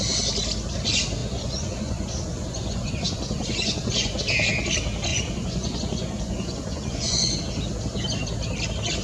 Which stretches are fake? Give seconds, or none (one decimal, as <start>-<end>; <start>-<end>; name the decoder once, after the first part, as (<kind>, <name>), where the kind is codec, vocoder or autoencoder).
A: 1.2-4.2 (vocoder, Vocos); 5.1-7.4